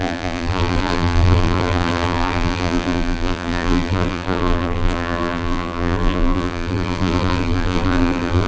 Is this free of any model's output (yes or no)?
no